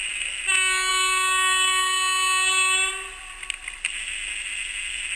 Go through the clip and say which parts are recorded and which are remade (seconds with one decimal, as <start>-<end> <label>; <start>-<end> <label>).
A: 0.0-5.2 recorded